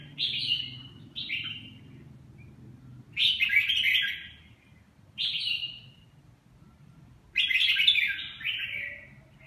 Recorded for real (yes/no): yes